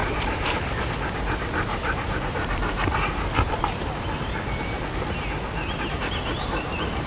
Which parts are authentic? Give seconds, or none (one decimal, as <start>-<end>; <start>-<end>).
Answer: 0.8-1.8; 4.8-7.1